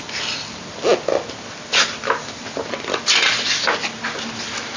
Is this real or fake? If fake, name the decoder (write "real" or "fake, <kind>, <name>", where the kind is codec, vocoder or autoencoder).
real